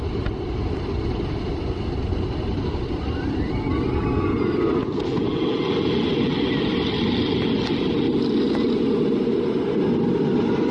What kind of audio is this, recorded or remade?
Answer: recorded